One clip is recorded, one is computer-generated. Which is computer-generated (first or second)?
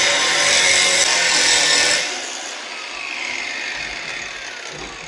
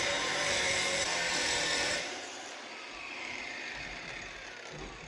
second